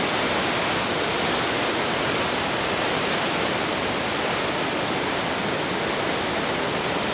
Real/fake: real